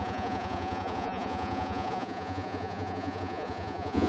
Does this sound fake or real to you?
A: fake